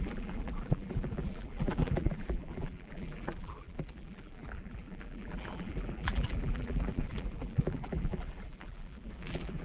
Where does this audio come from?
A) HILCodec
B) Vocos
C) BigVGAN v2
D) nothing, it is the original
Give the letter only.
C